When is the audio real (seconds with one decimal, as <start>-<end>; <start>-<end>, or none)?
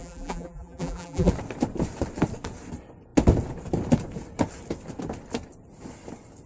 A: 1.3-6.5